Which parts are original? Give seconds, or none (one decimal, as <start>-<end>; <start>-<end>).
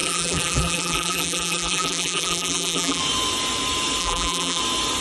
3.0-4.0; 4.6-5.0